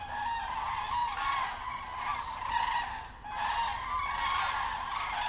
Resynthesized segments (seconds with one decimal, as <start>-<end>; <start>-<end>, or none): none